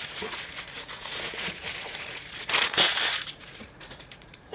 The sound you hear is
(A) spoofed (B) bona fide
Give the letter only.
A